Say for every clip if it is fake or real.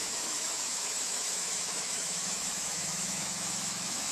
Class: fake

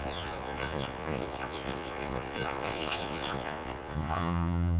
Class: fake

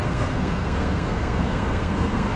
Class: fake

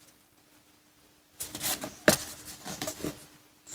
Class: real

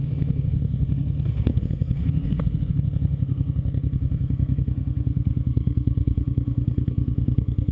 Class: fake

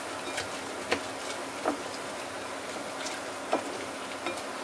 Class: real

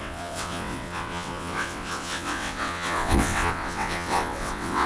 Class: fake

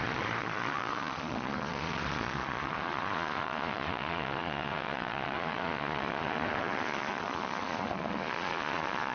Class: fake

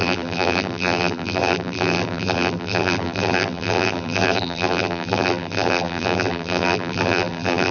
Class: fake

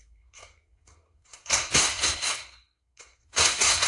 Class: fake